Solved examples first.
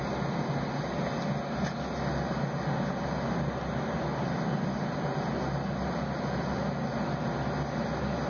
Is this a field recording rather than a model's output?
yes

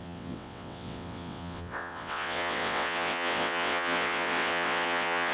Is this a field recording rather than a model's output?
no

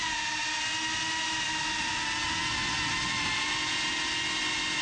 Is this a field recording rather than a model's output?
yes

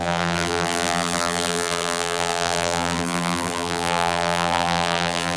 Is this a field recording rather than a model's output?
no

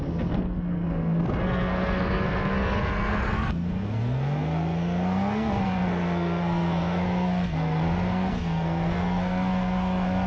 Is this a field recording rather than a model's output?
no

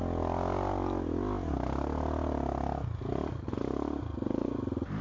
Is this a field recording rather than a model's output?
yes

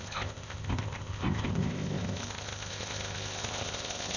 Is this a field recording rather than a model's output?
no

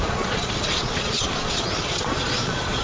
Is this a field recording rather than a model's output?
no